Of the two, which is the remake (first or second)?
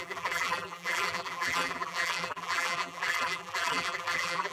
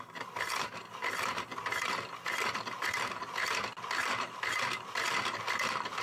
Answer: first